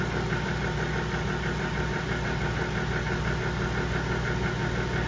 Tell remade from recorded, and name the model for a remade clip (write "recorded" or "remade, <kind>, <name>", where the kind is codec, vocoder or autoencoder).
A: recorded